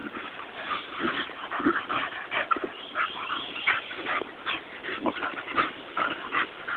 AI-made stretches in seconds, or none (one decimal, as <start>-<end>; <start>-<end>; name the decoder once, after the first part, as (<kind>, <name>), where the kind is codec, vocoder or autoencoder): 0.0-1.6 (vocoder, BigVGAN v2)